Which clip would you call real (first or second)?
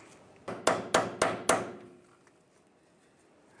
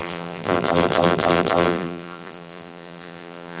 first